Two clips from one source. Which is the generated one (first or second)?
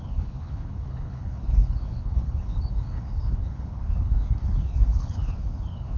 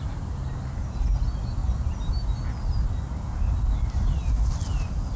first